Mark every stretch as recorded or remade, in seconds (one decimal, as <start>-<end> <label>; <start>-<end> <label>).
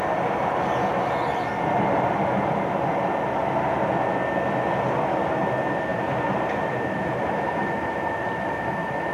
0.0-5.9 recorded; 5.9-9.1 remade